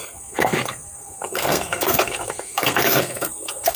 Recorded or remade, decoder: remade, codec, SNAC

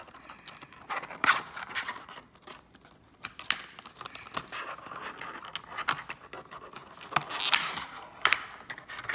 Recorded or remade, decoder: recorded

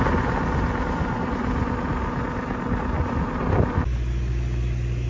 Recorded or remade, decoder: recorded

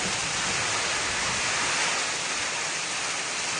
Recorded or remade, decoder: recorded